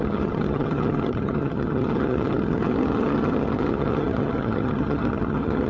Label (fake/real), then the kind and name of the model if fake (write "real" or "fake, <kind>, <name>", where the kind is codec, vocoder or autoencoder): fake, vocoder, HiFi-GAN